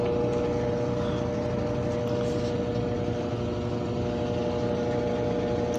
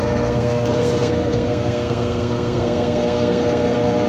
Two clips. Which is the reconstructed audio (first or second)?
second